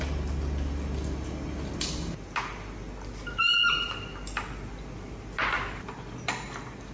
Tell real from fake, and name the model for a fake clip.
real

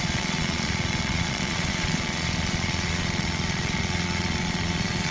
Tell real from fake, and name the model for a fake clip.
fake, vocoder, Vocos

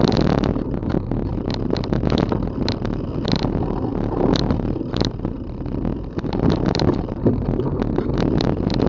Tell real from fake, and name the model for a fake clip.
real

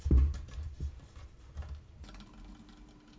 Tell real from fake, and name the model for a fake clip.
real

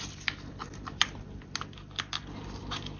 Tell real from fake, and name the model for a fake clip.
real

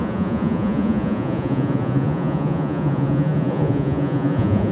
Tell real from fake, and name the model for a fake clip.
fake, vocoder, Vocos